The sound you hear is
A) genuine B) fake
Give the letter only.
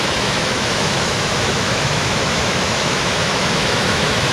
B